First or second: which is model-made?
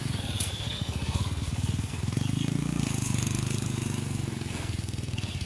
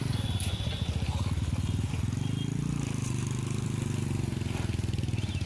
first